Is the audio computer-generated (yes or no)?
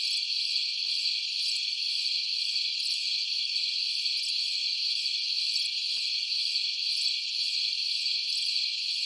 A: no